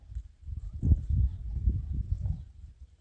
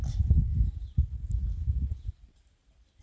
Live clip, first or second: second